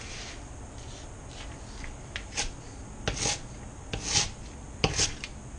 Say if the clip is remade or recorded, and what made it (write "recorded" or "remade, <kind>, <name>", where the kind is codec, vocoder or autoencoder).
recorded